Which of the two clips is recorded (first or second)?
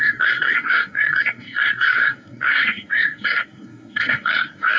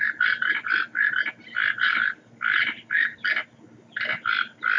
second